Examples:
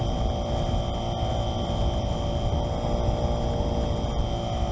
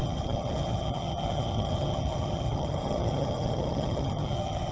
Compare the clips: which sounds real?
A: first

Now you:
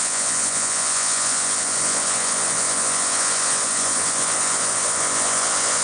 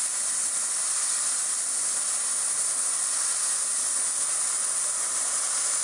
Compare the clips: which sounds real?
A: second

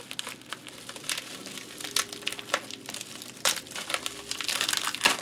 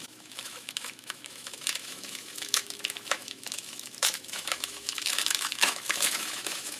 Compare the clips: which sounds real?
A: first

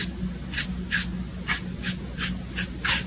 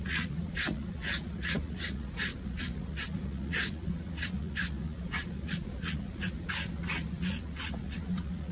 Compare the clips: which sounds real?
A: first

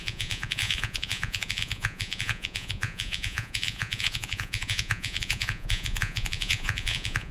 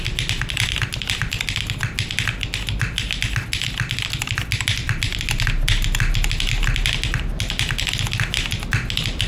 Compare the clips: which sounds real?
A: second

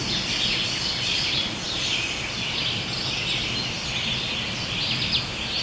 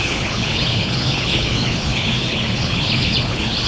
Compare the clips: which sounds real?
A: first